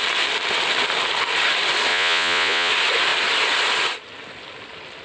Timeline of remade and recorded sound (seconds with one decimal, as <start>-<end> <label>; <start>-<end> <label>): 0.0-1.9 recorded; 1.9-2.7 remade; 2.7-5.0 recorded